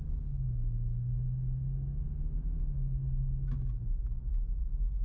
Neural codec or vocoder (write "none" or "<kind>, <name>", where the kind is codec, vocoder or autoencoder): none